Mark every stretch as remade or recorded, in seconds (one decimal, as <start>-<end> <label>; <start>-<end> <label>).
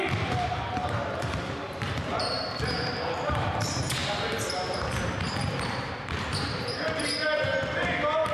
0.0-4.0 remade; 4.0-4.5 recorded; 4.5-8.3 remade